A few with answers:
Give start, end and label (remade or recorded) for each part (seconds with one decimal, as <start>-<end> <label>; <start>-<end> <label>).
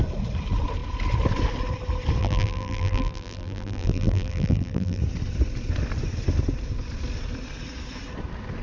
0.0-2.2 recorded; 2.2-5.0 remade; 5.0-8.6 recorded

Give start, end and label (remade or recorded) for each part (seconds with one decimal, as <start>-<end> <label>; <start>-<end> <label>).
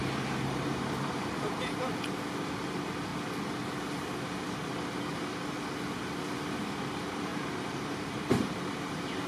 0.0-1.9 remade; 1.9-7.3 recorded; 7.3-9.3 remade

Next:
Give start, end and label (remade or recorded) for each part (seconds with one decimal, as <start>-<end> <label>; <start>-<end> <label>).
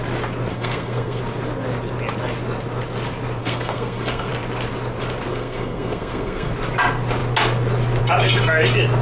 0.0-0.5 recorded; 0.5-1.2 remade; 1.2-3.4 recorded; 3.4-4.3 remade; 4.3-5.3 recorded; 5.3-6.5 remade; 6.5-9.0 recorded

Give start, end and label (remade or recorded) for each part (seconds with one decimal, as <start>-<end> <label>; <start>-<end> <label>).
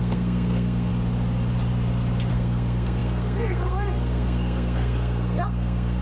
0.0-0.9 remade; 0.9-2.3 recorded; 2.3-6.0 remade